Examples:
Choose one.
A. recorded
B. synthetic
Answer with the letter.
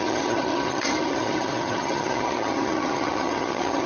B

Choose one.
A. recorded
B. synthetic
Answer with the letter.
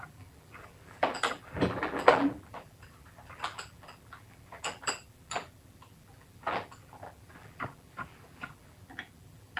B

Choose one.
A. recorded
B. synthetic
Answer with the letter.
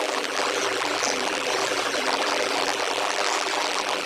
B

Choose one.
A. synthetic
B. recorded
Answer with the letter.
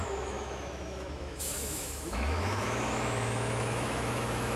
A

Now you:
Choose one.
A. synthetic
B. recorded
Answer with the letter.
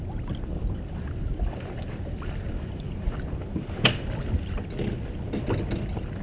B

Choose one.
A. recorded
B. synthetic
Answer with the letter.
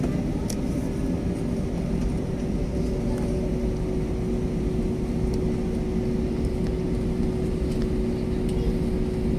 A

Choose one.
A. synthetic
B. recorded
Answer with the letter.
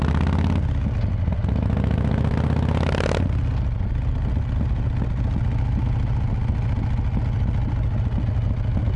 B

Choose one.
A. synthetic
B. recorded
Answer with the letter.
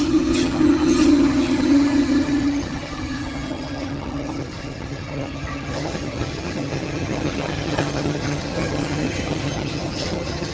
A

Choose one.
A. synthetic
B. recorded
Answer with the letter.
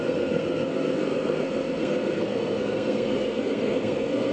A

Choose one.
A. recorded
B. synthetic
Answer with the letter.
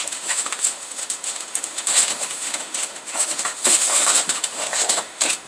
B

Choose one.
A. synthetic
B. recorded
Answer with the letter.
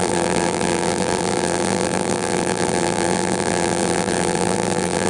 A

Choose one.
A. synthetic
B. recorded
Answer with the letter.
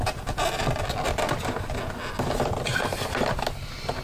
B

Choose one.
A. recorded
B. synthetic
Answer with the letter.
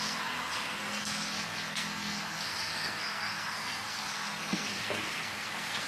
B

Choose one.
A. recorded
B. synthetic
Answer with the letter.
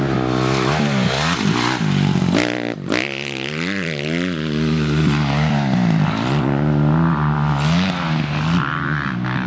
A